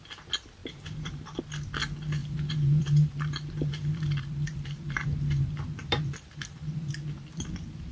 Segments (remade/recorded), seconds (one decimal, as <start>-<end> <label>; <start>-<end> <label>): 0.0-0.6 recorded; 0.6-1.4 remade; 1.4-2.2 recorded; 2.2-6.9 remade; 6.9-7.9 recorded